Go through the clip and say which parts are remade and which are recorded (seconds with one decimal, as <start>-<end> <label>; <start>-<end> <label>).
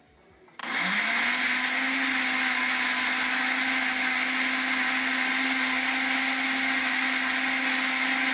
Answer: 0.0-8.3 recorded